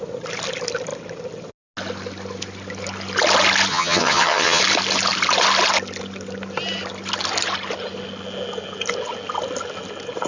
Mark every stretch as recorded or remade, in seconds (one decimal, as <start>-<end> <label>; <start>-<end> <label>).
0.0-3.7 recorded; 3.7-4.6 remade; 4.6-10.3 recorded